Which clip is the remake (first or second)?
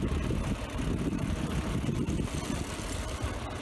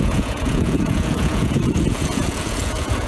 second